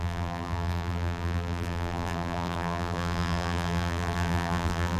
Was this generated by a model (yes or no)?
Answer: yes